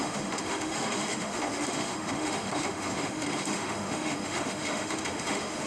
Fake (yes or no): yes